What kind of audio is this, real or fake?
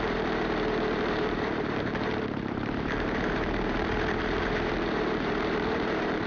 fake